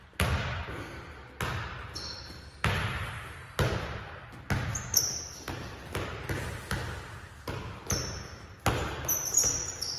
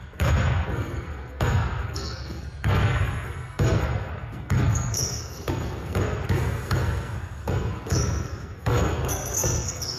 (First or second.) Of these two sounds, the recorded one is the first